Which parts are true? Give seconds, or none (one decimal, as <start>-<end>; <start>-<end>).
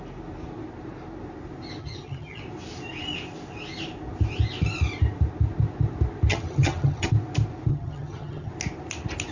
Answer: 0.0-1.8; 2.4-6.3; 7.1-7.7; 8.5-9.3